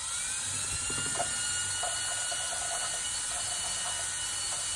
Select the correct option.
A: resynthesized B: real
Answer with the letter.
A